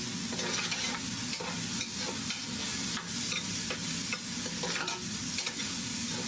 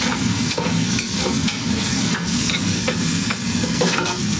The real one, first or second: first